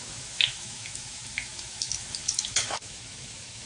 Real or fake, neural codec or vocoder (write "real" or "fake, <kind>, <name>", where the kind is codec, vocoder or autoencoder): fake, autoencoder, DAC-VAE